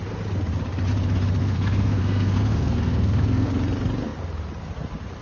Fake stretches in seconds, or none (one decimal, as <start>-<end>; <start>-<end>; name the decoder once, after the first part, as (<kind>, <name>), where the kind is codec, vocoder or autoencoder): 1.4-3.5 (codec, SNAC)